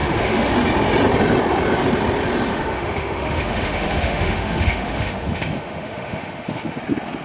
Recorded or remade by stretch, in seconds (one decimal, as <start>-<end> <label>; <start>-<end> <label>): 0.0-0.5 remade; 0.5-2.5 recorded; 2.5-6.8 remade; 6.8-7.2 recorded